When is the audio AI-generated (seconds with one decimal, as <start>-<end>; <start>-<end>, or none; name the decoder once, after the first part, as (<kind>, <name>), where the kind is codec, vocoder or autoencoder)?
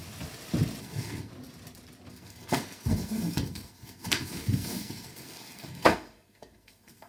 0.8-1.3 (codec, SNAC); 2.1-7.1